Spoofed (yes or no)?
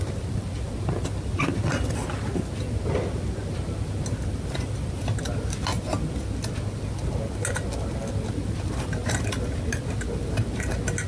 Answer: no